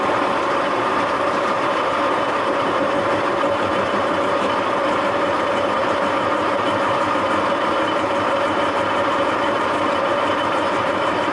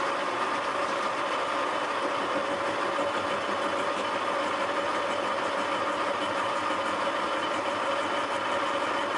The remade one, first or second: first